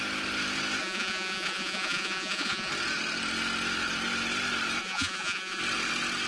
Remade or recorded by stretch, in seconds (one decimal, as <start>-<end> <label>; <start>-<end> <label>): 0.0-0.8 recorded; 0.8-2.7 remade; 2.7-4.8 recorded; 4.8-5.6 remade; 5.6-6.3 recorded